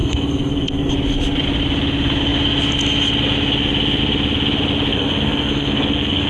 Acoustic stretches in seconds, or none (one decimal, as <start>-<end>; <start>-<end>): 0.9-4.9